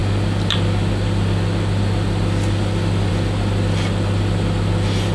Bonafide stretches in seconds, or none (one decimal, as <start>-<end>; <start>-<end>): 0.0-5.1